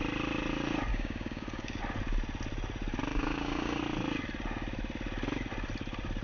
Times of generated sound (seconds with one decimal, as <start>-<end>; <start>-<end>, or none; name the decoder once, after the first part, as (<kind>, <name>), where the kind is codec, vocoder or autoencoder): 0.9-1.8 (codec, DAC); 3.1-3.8